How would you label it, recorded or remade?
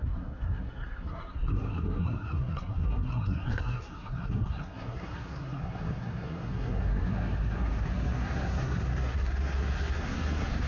remade